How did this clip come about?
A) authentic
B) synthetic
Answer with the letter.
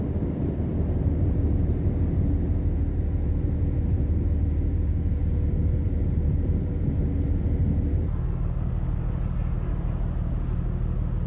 A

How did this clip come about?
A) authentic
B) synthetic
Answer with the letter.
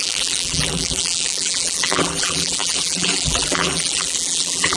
B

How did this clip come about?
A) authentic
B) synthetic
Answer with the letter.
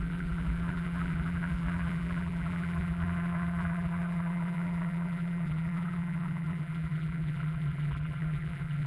B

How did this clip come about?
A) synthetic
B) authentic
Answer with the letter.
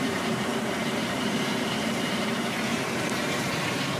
A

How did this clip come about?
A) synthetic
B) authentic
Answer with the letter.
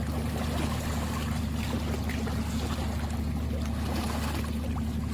B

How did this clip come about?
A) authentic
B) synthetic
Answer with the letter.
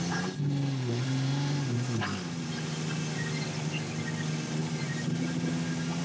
A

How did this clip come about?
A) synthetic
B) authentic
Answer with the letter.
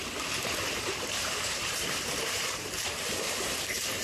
A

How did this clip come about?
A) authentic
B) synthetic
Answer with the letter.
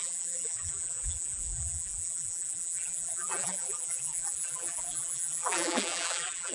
B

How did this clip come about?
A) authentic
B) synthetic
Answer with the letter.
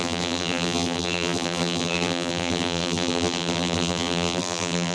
B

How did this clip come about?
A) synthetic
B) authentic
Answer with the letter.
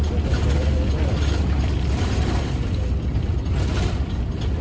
B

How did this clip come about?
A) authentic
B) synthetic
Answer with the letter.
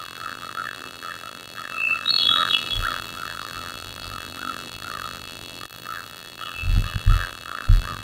B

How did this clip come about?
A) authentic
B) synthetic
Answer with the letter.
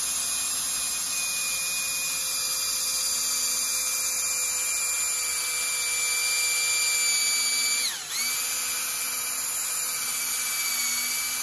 A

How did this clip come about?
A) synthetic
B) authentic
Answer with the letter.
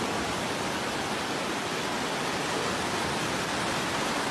B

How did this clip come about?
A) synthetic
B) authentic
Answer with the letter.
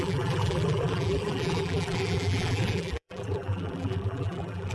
A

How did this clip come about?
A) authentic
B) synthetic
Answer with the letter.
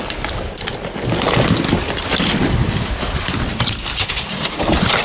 A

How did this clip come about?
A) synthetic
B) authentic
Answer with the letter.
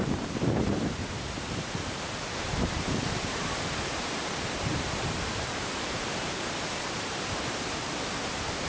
A